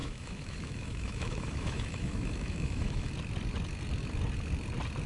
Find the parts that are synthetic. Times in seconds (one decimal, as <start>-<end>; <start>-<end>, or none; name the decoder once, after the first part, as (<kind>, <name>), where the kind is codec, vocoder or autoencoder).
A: 0.0-3.1 (autoencoder, DAC-VAE)